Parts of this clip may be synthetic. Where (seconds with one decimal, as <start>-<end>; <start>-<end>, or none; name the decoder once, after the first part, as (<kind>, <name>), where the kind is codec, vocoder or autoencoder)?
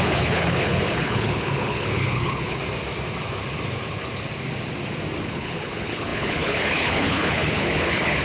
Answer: 0.0-2.6 (codec, HILCodec); 5.2-8.2